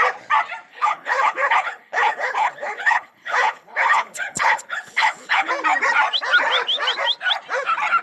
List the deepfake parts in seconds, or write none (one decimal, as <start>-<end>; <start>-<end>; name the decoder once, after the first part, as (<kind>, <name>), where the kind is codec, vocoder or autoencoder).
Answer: 0.7-5.5 (codec, HILCodec)